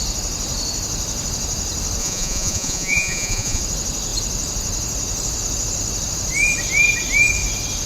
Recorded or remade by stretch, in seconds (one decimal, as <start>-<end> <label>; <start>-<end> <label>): 0.0-2.0 recorded; 2.0-3.6 remade; 3.6-7.9 recorded